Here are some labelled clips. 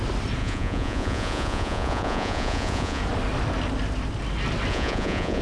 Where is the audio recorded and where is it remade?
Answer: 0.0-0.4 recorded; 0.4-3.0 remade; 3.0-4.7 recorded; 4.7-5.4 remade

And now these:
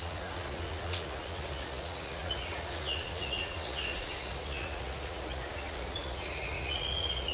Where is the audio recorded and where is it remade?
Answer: 0.0-7.3 remade

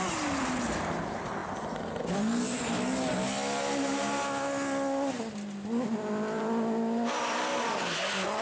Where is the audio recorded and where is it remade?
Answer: 0.0-8.4 recorded

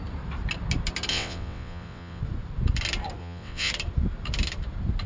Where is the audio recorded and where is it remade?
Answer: 0.0-1.1 recorded; 1.1-2.2 remade; 2.2-3.2 recorded; 3.2-3.7 remade; 3.7-5.1 recorded

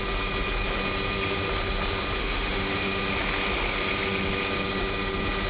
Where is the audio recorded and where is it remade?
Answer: 0.0-2.2 recorded; 2.2-3.0 remade; 3.0-5.5 recorded

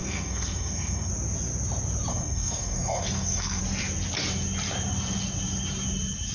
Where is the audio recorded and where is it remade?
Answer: 0.0-1.1 remade; 1.1-2.1 recorded; 2.1-3.6 remade; 3.6-6.3 recorded

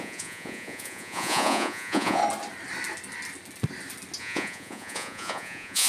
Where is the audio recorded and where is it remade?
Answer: 0.0-2.2 remade; 2.2-4.2 recorded; 4.2-5.9 remade